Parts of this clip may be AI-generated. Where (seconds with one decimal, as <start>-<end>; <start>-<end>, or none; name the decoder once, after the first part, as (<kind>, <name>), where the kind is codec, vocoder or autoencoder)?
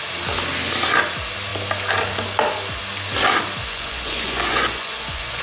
3.6-5.4 (vocoder, Vocos)